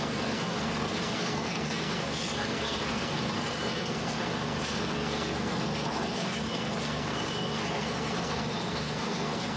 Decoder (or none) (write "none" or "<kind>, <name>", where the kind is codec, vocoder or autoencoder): codec, SNAC